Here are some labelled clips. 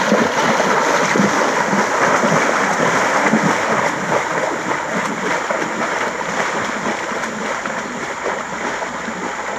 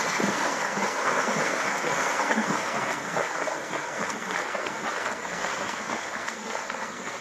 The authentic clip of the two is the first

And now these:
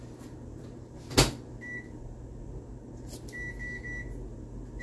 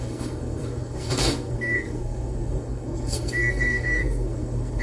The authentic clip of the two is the first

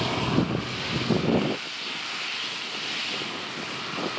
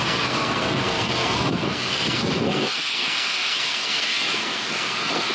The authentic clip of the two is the first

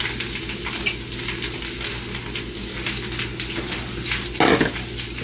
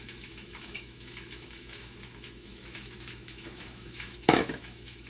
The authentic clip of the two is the first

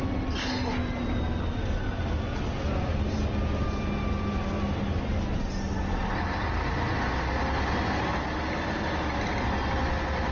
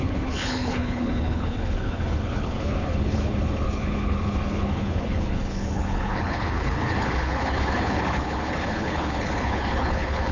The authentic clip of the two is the first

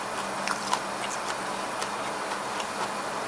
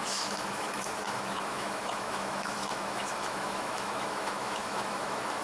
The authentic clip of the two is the first